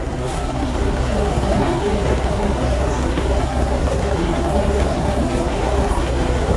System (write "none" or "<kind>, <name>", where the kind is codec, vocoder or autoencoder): codec, SNAC